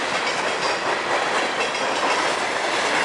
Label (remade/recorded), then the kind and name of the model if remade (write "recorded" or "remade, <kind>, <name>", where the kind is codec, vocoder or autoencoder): recorded